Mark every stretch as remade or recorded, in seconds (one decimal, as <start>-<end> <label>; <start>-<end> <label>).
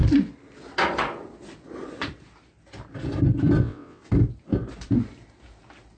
0.0-3.6 recorded; 3.6-4.0 remade; 4.0-6.0 recorded